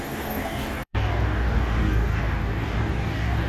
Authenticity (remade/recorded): remade